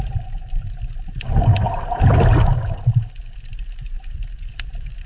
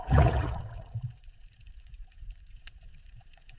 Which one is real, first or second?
first